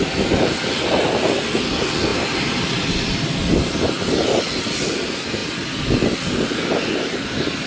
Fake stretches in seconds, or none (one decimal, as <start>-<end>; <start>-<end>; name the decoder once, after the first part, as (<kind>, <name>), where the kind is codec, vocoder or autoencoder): 2.1-3.9 (vocoder, BigVGAN v2)